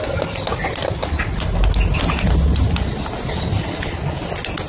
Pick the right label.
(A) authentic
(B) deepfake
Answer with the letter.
A